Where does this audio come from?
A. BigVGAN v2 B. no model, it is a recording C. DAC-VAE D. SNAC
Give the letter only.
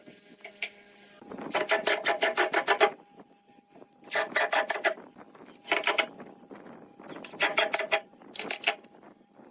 B